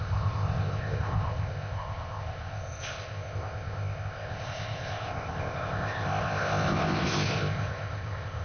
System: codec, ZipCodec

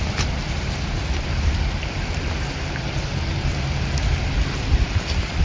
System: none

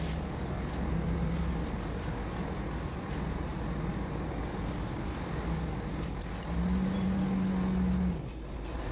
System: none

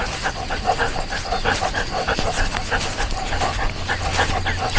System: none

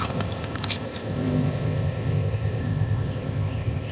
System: codec, ZipCodec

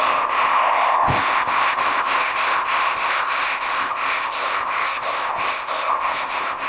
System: codec, ZipCodec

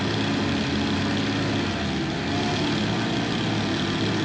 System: none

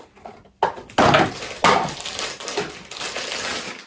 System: none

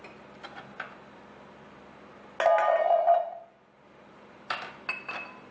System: none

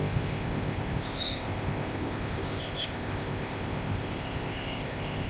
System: codec, ZipCodec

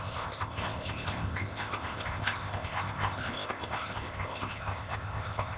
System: codec, ZipCodec